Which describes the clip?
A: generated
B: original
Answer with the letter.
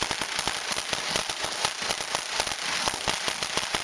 A